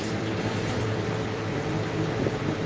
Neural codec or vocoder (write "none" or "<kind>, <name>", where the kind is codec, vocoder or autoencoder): vocoder, BigVGAN v2